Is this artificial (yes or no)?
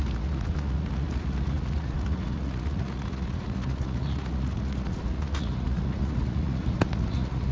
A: yes